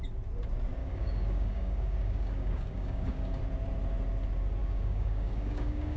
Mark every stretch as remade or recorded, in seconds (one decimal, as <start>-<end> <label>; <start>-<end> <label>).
0.0-0.8 recorded; 0.8-3.4 remade; 3.4-4.6 recorded; 4.6-6.0 remade